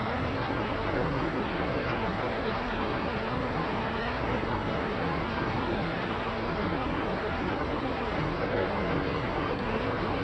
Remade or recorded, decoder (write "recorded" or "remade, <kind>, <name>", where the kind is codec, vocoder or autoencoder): remade, codec, SNAC